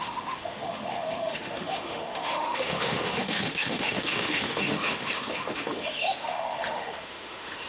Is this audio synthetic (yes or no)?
yes